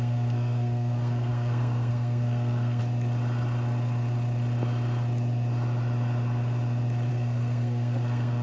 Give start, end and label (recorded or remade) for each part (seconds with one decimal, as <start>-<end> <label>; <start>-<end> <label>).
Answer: 0.0-2.8 remade; 2.8-7.1 recorded; 7.1-8.4 remade